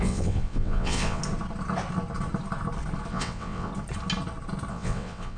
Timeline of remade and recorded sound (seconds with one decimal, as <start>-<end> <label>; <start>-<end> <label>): 0.0-1.2 remade; 1.2-3.1 recorded; 3.1-3.7 remade; 3.7-4.7 recorded; 4.7-5.4 remade